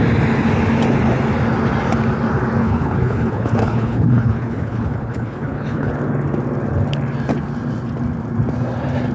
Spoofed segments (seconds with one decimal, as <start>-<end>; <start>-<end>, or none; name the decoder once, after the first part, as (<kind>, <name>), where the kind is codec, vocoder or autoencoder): 2.6-5.9 (codec, HILCodec)